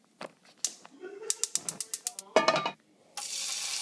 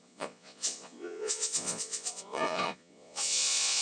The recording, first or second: first